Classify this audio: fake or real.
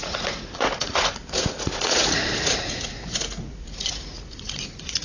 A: fake